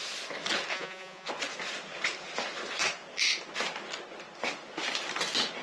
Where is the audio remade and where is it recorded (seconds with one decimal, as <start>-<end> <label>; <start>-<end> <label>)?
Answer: 0.0-0.7 recorded; 0.7-1.3 remade; 1.3-5.6 recorded